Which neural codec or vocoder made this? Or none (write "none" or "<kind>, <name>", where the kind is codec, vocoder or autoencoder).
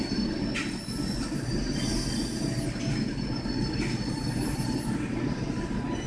none